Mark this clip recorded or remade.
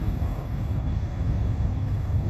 remade